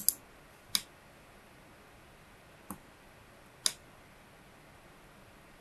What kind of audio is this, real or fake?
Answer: real